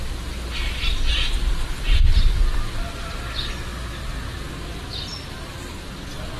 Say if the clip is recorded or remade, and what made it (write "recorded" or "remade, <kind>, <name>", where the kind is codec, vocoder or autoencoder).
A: recorded